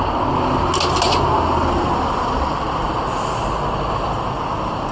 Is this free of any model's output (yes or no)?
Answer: yes